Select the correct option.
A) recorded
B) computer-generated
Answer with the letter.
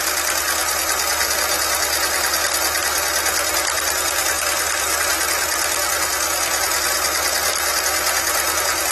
A